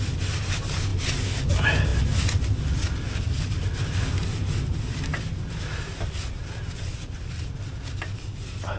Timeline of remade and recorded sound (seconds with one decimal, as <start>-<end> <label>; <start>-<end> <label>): 0.0-8.8 recorded